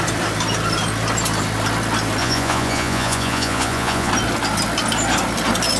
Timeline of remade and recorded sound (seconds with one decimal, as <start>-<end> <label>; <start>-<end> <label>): 0.0-2.2 recorded; 2.2-4.1 remade; 4.1-5.8 recorded